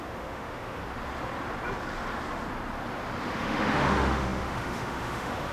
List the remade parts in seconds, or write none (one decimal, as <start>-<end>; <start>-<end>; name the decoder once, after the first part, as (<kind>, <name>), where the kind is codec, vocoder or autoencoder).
0.0-0.8 (autoencoder, DAC-VAE); 3.2-5.5